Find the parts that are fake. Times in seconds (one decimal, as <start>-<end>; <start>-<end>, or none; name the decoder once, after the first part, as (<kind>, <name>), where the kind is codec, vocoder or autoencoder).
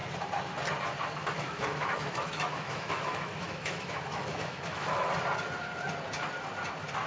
1.2-5.1 (autoencoder, DAC-VAE)